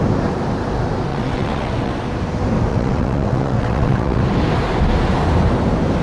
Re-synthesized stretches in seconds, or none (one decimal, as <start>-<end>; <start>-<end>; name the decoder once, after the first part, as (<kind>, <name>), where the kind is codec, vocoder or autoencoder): 1.1-1.9 (vocoder, WaveNeXt); 2.7-4.2

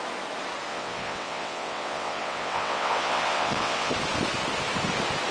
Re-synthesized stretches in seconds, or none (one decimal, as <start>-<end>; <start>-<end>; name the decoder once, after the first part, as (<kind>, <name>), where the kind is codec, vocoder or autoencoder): 0.7-3.9 (vocoder, WaveNeXt)

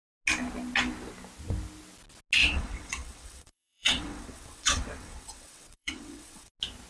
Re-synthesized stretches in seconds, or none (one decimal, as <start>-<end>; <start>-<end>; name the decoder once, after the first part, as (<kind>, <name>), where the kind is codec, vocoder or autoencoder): 2.4-6.5 (vocoder, WaveNeXt)

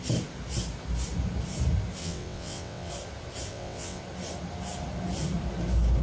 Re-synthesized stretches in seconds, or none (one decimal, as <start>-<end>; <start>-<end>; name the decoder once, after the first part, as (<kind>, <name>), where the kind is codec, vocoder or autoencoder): 2.0-2.9 (vocoder, WaveNeXt); 3.5-4.0

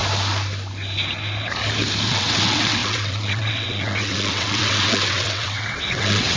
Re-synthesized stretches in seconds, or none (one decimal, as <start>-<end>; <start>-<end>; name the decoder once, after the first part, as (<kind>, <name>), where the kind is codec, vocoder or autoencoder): 2.1-6.4 (vocoder, WaveNeXt)

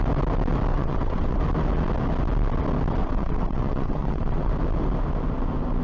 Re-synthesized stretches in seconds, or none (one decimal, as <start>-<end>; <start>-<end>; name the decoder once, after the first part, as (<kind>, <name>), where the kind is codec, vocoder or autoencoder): 0.7-1.4 (vocoder, WaveNeXt); 3.0-4.5